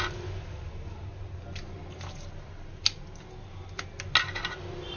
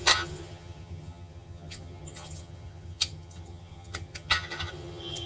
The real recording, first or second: first